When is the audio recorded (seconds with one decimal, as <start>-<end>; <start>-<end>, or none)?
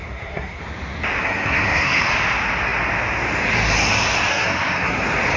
0.6-1.2; 2.1-4.3; 5.0-5.4